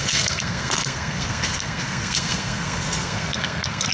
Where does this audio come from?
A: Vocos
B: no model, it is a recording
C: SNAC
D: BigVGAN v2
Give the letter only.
C